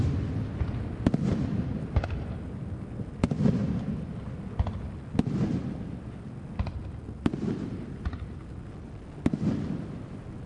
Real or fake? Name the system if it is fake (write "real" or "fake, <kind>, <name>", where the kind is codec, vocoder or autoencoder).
real